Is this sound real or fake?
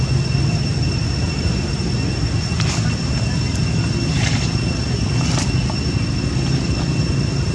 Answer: real